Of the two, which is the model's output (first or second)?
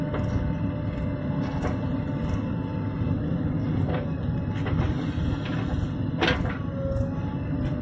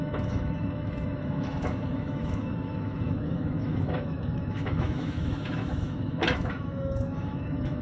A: second